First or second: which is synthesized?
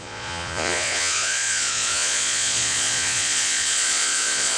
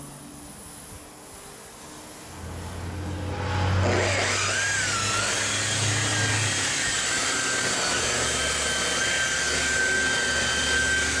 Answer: first